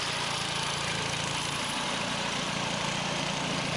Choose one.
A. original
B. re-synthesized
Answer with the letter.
A